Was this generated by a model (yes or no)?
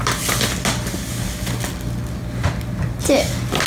no